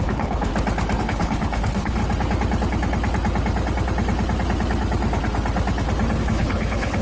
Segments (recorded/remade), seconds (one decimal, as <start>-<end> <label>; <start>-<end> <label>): 0.0-0.5 remade; 0.5-1.0 recorded; 1.0-2.0 remade; 2.0-6.2 recorded; 6.2-7.0 remade